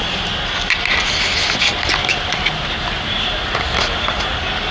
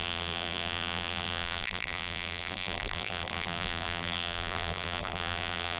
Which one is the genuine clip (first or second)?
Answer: first